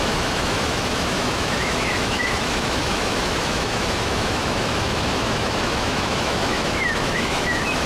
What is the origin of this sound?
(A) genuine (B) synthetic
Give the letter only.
B